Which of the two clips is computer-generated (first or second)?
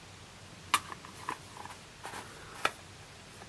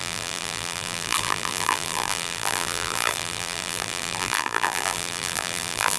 second